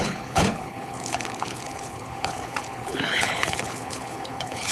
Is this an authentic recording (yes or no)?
no